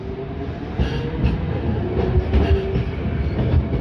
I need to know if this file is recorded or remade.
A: recorded